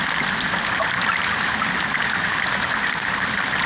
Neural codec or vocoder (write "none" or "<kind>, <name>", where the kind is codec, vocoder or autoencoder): none